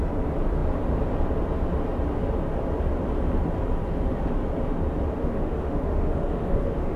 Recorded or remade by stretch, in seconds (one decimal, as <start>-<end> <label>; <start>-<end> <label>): 0.0-5.2 recorded; 5.2-7.0 remade